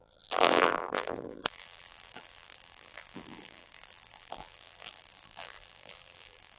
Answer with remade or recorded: remade